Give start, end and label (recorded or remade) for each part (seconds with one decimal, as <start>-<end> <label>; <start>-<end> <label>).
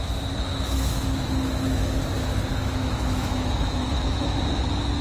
0.0-0.5 recorded; 0.5-2.0 remade; 2.0-2.5 recorded; 2.5-4.5 remade; 4.5-5.0 recorded